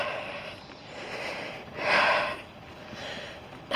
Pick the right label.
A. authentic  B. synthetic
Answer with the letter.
A